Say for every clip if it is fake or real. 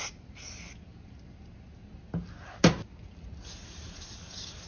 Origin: real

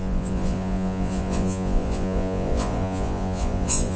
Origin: fake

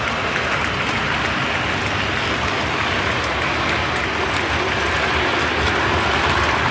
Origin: real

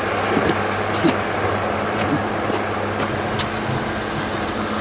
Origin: real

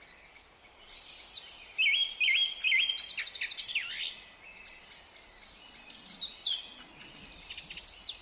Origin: real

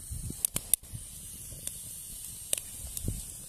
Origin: real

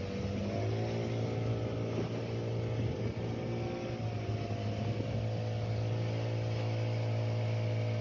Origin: real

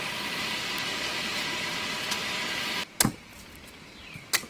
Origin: real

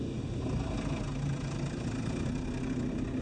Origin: real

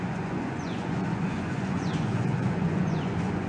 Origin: fake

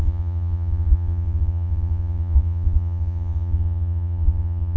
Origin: fake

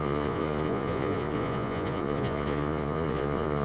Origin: fake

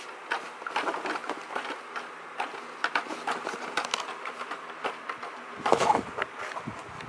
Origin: real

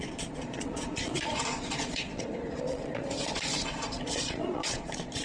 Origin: fake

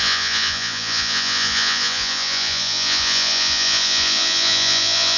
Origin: fake